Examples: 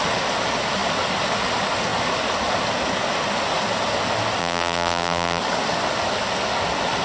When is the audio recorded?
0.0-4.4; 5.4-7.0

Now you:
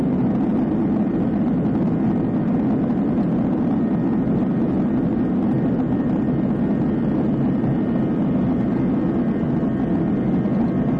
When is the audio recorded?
0.0-11.0

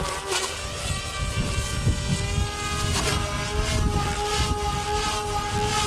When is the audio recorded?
0.0-5.9

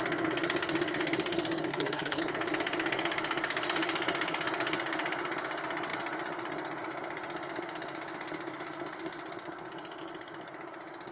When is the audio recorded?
0.0-1.7; 2.2-11.1

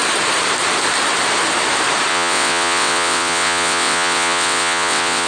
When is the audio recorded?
0.0-2.1

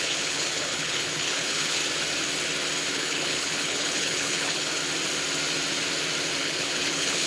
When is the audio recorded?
1.8-2.9; 4.8-6.4

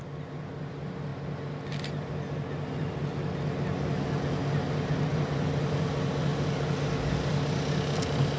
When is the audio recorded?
0.0-8.4

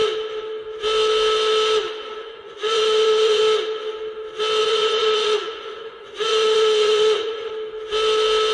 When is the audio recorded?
0.0-2.1; 3.4-4.6; 7.5-8.5